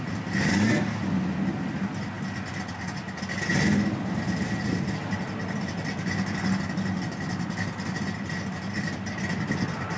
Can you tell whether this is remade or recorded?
recorded